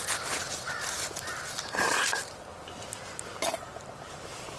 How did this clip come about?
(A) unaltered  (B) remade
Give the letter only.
B